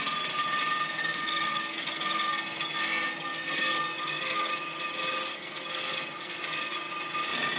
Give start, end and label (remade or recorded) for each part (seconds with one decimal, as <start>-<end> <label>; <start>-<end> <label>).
0.0-1.0 recorded; 1.0-4.5 remade; 4.5-5.3 recorded; 5.3-6.9 remade; 6.9-7.6 recorded